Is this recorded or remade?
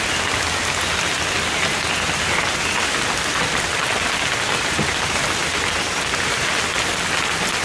recorded